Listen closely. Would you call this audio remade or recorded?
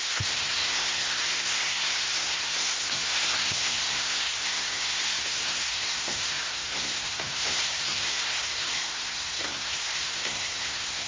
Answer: remade